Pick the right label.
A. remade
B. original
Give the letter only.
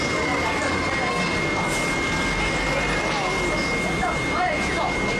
B